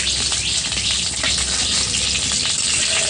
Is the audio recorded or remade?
recorded